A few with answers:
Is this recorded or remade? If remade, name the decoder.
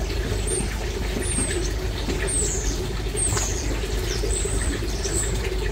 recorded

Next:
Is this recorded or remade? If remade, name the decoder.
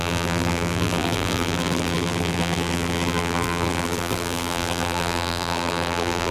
remade, vocoder, BigVGAN v2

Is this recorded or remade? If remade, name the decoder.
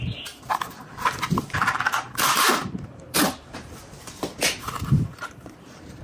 remade, vocoder, BigVGAN v2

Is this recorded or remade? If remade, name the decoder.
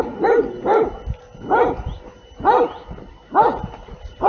remade, vocoder, BigVGAN v2